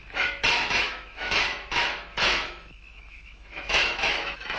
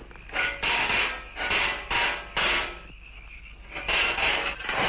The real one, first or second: second